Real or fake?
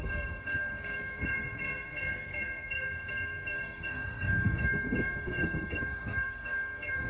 fake